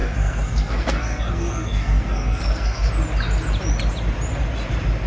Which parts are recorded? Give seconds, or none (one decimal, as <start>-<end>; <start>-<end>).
2.9-5.1